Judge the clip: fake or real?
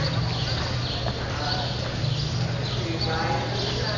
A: real